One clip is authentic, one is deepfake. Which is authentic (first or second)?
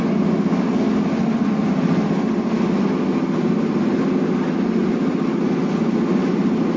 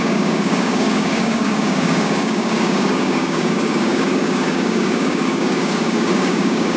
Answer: first